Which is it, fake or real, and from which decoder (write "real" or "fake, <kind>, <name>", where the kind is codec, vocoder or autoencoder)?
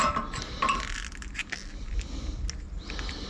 real